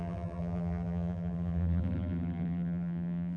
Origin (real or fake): fake